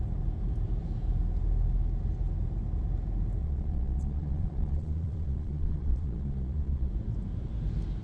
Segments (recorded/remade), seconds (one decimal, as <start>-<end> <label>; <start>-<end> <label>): 0.0-3.4 recorded; 3.4-6.9 remade; 6.9-8.0 recorded